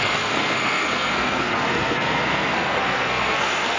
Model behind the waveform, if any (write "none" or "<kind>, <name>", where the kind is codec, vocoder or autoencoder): codec, SNAC